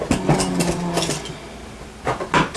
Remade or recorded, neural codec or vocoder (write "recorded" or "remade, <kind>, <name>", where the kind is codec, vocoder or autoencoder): recorded